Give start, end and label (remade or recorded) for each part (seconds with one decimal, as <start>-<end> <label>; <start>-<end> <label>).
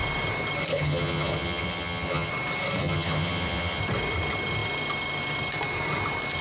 0.0-0.7 recorded; 0.7-2.3 remade; 2.3-2.8 recorded; 2.8-3.8 remade; 3.8-6.4 recorded